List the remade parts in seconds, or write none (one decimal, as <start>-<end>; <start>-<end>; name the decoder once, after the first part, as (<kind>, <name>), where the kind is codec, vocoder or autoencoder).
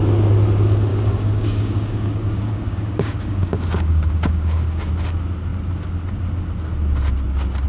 0.9-4.9 (codec, DAC)